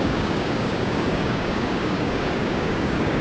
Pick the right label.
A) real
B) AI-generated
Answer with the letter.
B